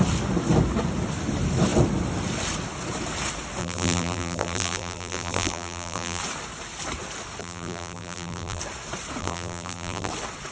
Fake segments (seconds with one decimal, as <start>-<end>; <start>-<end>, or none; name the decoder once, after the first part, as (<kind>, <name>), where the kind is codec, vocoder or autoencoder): 3.6-6.2 (vocoder, BigVGAN v2); 7.4-8.6; 9.2-10.1